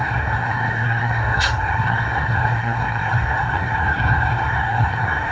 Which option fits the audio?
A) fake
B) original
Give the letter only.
A